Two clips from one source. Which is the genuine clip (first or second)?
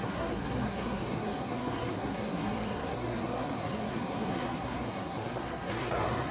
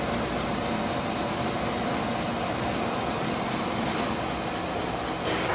second